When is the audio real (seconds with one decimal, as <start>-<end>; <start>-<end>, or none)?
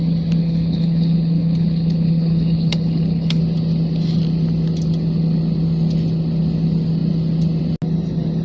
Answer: 0.0-0.4; 3.4-8.4